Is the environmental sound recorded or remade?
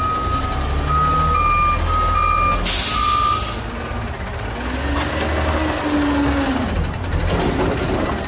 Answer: recorded